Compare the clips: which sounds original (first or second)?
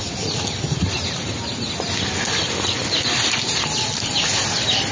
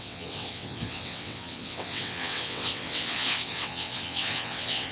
first